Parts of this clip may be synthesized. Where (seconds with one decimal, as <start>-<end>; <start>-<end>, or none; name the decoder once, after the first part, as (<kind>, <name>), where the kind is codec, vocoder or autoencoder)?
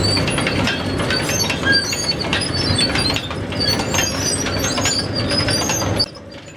none